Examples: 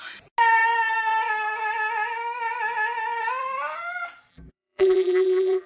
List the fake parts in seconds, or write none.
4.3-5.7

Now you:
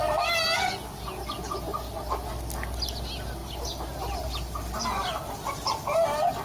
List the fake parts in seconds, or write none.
1.7-2.3; 3.4-5.4

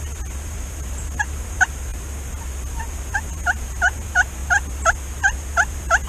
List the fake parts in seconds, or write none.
0.0-1.9; 3.1-4.4

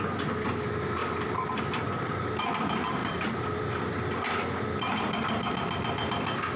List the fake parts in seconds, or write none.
1.0-1.6; 3.0-4.0

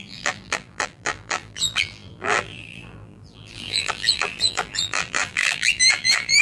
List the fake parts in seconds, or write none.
0.0-6.4

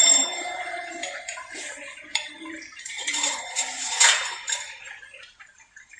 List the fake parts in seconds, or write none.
0.0-6.0

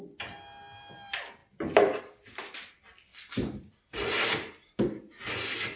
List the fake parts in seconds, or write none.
3.1-3.8

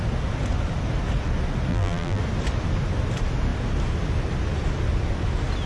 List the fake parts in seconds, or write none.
1.7-2.2